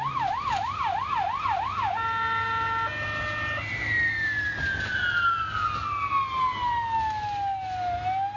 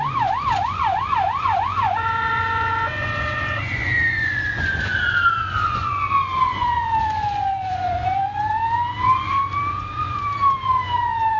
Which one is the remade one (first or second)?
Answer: second